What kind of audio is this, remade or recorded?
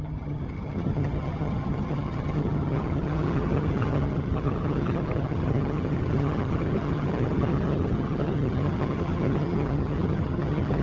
remade